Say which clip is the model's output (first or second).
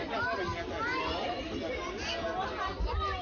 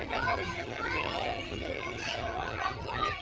second